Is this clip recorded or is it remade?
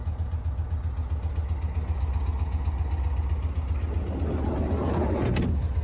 recorded